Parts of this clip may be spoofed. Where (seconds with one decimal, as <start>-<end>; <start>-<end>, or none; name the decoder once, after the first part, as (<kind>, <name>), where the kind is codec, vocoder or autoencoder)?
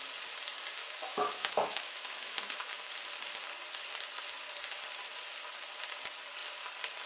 0.8-2.9 (autoencoder, DAC-VAE)